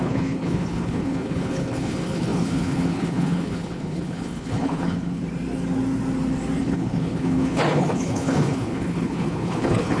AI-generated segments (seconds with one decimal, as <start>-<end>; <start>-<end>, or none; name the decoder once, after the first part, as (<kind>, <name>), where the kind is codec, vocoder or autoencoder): 0.0-5.2 (codec, HILCodec); 6.6-10.0